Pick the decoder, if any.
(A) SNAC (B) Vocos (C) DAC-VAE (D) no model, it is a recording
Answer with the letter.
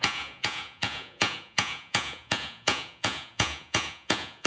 B